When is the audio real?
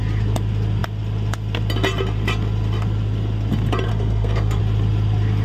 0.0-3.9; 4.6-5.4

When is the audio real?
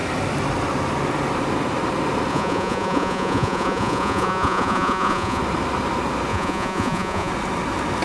0.0-2.3; 5.4-6.3; 7.3-8.0